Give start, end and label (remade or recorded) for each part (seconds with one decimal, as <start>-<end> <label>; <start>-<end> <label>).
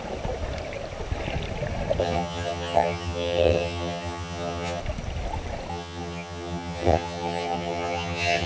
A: 0.0-2.0 recorded; 2.0-4.8 remade; 4.8-5.7 recorded; 5.7-8.5 remade